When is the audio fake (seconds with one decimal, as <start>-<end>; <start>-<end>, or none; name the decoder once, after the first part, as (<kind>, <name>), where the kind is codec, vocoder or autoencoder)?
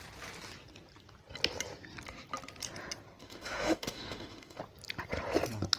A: 3.2-4.6 (autoencoder, DAC-VAE)